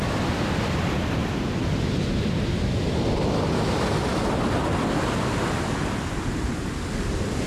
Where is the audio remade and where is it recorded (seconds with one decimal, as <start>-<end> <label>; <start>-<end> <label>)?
0.0-7.5 recorded